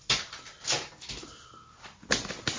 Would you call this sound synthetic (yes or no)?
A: no